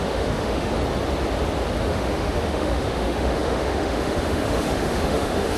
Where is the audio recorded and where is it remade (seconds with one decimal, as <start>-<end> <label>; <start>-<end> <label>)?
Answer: 0.0-0.7 remade; 0.7-1.8 recorded; 1.8-5.6 remade